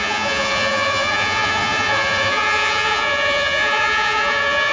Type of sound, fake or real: fake